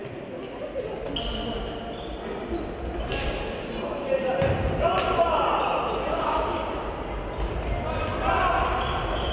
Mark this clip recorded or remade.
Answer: recorded